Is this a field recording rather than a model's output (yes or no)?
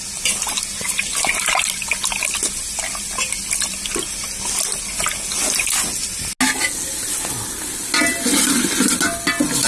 yes